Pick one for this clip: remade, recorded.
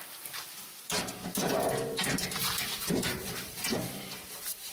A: remade